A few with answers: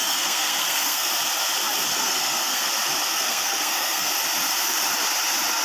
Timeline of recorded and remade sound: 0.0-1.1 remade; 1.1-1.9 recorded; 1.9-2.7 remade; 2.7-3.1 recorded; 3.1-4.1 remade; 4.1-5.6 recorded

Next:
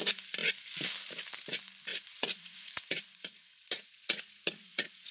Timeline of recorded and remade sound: 0.0-1.9 recorded; 1.9-5.1 remade

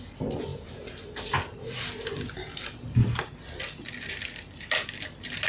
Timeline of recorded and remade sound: 0.0-5.5 recorded

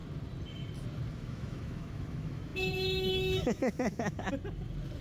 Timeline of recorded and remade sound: 0.0-1.1 recorded; 1.1-4.3 remade; 4.3-5.0 recorded